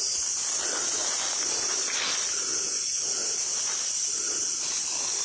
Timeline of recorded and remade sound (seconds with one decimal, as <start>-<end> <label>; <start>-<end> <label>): 0.0-5.2 recorded